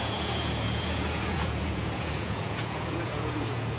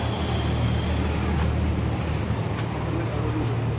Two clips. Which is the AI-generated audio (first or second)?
first